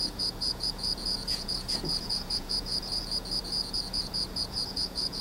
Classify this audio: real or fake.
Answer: fake